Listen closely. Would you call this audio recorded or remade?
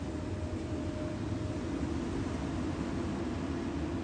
recorded